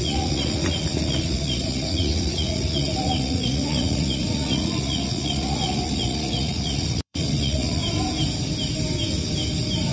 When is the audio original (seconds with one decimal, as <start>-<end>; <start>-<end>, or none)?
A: 7.8-9.9